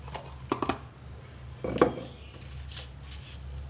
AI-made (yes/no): no